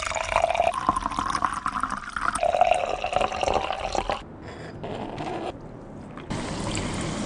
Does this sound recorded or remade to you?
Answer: recorded